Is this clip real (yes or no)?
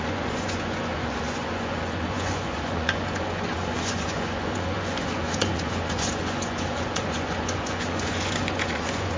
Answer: no